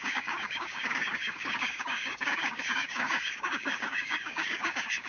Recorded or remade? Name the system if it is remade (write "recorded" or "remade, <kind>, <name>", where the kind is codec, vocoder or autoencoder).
remade, codec, DAC